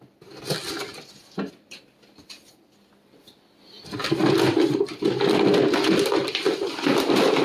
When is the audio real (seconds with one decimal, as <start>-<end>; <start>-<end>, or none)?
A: 0.0-7.4